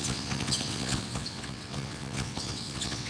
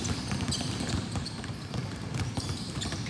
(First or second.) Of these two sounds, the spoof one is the first